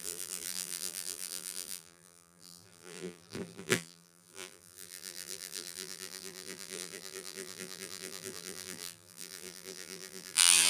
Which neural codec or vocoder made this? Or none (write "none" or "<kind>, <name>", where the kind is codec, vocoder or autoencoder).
vocoder, BigVGAN v2